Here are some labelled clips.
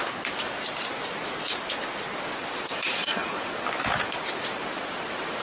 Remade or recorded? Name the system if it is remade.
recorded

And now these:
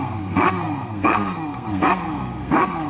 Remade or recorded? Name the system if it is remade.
remade, codec, SNAC